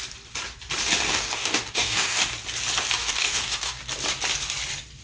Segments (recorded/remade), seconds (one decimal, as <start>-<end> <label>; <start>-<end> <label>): 0.0-1.1 recorded; 1.1-2.3 remade; 2.3-3.0 recorded; 3.0-3.8 remade; 3.8-5.0 recorded